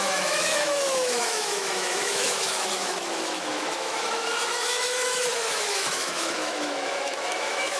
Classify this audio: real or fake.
fake